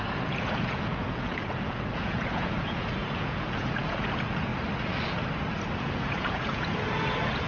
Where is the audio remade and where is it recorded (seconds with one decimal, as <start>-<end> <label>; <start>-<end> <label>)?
0.0-4.5 remade; 4.5-5.8 recorded; 5.8-7.5 remade